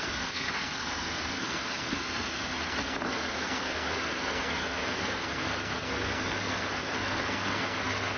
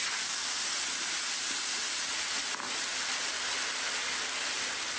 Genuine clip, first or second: second